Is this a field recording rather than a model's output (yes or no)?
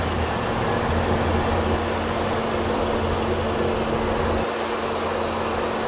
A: yes